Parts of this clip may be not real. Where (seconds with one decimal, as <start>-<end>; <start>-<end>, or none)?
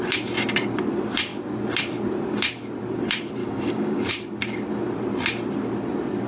3.4-4.1